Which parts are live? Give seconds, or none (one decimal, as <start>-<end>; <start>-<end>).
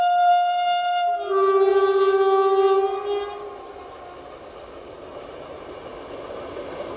0.0-7.0